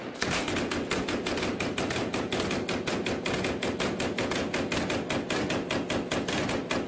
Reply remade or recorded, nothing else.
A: recorded